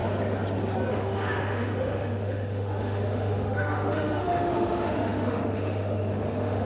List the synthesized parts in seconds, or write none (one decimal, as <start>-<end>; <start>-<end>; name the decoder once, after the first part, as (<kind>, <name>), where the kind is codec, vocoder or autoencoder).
0.9-6.6 (autoencoder, DAC-VAE)